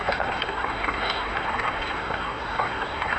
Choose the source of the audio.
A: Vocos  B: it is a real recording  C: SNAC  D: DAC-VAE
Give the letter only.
C